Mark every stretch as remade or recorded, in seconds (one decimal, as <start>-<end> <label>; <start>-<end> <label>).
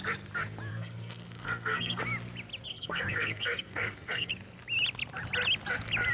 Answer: 0.0-0.7 recorded; 0.7-2.0 remade; 2.0-2.7 recorded; 2.7-4.3 remade; 4.3-6.1 recorded